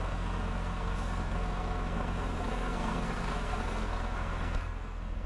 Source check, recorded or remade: remade